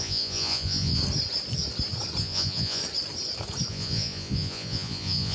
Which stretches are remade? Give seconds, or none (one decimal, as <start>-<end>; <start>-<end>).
0.0-1.0; 2.2-2.8; 3.7-5.3